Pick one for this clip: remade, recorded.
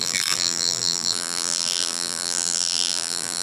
remade